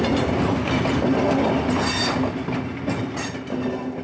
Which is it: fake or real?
real